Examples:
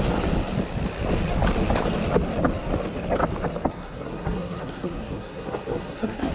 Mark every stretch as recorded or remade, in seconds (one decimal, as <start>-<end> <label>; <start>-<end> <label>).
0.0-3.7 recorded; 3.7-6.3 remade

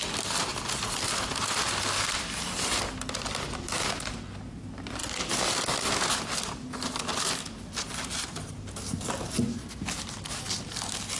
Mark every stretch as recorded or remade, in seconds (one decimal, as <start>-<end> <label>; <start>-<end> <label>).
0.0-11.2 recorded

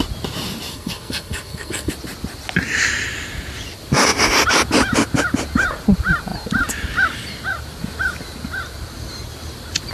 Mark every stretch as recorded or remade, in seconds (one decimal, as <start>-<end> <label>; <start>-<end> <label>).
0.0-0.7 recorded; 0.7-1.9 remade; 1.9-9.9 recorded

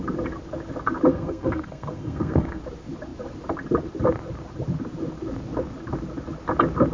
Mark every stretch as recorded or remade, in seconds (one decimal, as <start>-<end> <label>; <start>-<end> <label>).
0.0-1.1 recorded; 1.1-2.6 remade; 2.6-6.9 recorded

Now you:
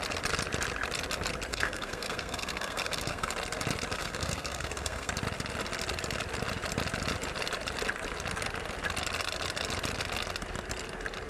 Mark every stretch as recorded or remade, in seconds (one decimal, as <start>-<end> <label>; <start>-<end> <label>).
0.0-1.5 recorded; 1.5-3.3 remade; 3.3-3.9 recorded; 3.9-5.1 remade; 5.1-11.3 recorded